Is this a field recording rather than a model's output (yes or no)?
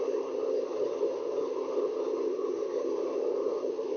yes